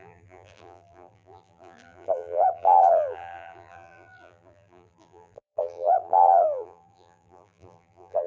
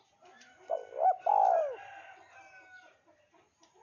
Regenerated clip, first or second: first